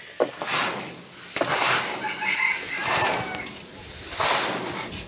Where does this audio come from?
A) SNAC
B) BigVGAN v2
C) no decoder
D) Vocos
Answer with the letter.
C